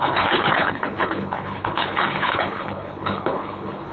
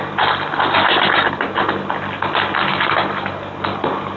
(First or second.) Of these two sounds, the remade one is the first